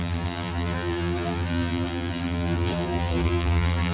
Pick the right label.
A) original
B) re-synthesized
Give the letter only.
B